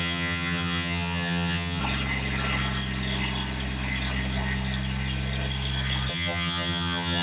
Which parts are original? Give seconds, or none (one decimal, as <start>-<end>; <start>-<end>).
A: 1.8-6.1